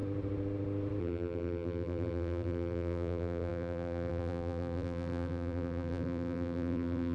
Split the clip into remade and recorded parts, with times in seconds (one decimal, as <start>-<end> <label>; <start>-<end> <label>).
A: 0.0-1.0 recorded; 1.0-7.1 remade